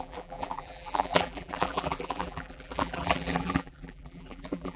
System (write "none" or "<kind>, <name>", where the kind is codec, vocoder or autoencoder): vocoder, BigVGAN v2